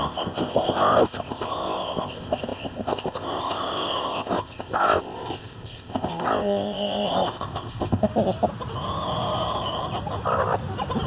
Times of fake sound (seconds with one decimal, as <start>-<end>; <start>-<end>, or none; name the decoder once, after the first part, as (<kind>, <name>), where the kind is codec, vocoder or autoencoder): 0.0-8.1 (codec, ZipCodec)